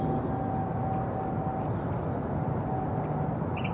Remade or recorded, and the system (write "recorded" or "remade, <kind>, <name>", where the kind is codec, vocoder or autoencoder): recorded